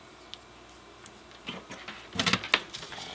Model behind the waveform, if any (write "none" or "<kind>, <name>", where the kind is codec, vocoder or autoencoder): none